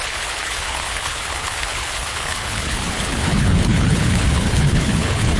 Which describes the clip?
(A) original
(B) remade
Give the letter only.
B